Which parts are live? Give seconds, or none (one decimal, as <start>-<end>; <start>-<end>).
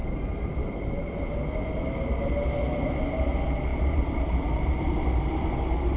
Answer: 1.4-3.7; 4.8-6.0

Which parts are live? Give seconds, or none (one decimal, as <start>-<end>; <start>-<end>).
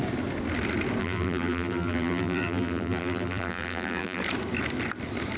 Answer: 0.0-1.0; 4.2-5.4